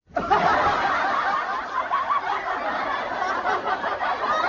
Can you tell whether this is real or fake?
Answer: real